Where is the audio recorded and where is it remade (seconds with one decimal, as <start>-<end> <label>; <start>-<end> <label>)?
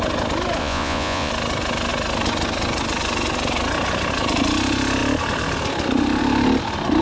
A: 0.0-0.6 recorded; 0.6-1.3 remade; 1.3-7.0 recorded